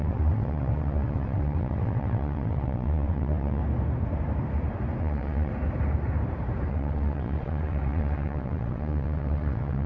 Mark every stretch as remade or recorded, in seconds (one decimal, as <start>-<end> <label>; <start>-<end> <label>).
0.0-3.6 remade; 3.6-5.0 recorded; 5.0-5.5 remade; 5.5-6.7 recorded; 6.7-9.9 remade